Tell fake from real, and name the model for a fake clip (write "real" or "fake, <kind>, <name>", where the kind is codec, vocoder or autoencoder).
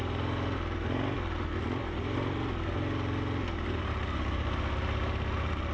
real